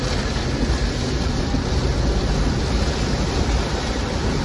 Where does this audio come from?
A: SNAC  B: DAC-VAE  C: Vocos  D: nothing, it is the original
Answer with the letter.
D